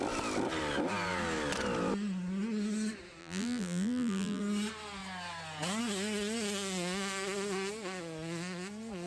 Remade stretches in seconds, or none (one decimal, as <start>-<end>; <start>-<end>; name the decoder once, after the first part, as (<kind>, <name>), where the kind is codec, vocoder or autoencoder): 3.2-4.4 (vocoder, BigVGAN v2)